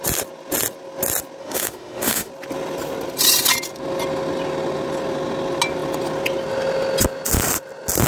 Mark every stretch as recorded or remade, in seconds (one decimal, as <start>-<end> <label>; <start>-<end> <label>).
0.0-1.4 recorded; 1.4-2.3 remade; 2.3-8.1 recorded

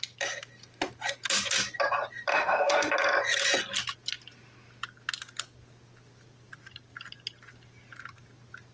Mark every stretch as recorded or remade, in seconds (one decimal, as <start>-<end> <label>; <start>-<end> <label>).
0.0-2.3 recorded; 2.3-2.9 remade; 2.9-8.7 recorded

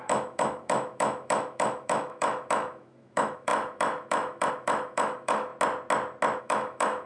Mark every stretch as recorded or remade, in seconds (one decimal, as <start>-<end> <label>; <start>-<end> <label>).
0.0-5.5 remade; 5.5-6.4 recorded; 6.4-7.1 remade

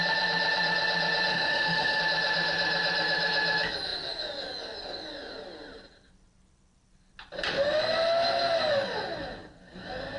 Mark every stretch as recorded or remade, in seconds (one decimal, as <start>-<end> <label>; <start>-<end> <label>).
0.0-1.3 recorded; 1.3-2.0 remade; 2.0-10.2 recorded